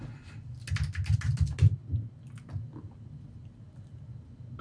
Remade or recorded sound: recorded